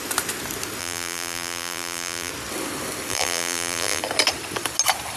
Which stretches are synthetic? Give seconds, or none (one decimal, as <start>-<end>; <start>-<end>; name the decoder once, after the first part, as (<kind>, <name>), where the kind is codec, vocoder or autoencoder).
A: 0.8-2.3 (vocoder, BigVGAN v2); 3.1-4.0